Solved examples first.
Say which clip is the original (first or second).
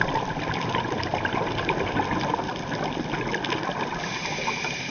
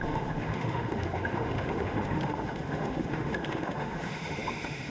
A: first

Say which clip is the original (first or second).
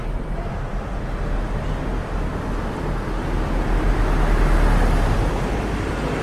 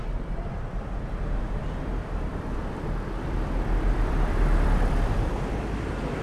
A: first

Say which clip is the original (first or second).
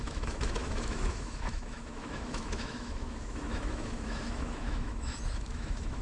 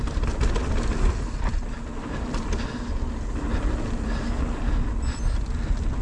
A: second